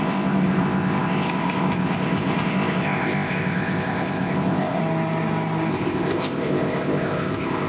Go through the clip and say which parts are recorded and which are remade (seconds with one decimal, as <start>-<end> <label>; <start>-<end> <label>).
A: 0.0-4.8 remade; 4.8-5.7 recorded; 5.7-7.7 remade